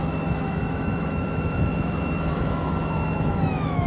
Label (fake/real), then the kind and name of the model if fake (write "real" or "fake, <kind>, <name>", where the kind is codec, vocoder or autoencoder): fake, autoencoder, DAC-VAE